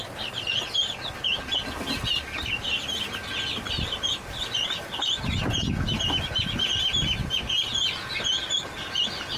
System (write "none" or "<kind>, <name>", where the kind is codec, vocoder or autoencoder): none